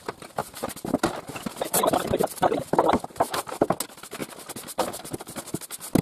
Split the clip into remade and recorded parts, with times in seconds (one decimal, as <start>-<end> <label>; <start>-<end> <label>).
0.0-2.2 recorded; 2.2-3.5 remade; 3.5-6.0 recorded